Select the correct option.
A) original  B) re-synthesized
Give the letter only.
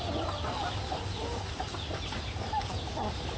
A